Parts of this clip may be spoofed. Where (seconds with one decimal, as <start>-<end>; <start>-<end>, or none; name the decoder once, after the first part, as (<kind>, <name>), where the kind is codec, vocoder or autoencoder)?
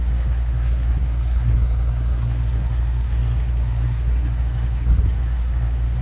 0.0-6.0 (codec, SNAC)